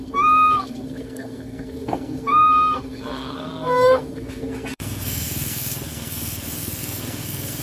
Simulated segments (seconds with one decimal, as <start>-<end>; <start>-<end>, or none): 0.0-7.6